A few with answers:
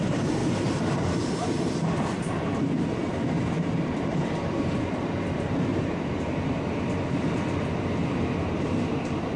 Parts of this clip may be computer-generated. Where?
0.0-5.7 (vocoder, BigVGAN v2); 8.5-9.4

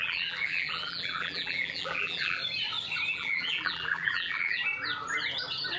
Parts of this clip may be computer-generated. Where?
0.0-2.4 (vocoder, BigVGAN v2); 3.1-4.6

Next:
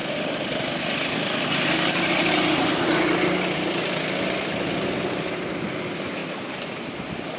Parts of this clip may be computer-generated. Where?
0.0-0.6 (vocoder, BigVGAN v2); 6.2-7.4

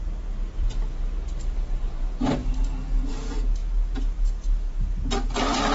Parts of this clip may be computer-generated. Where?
none

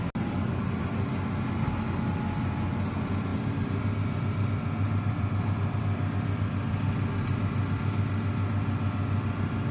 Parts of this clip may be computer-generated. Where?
3.3-7.8 (vocoder, BigVGAN v2)